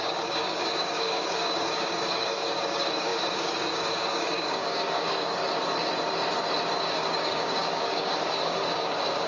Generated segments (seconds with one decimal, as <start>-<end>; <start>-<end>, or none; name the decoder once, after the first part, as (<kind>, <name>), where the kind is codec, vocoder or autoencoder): 0.0-5.4 (codec, DAC); 6.8-9.3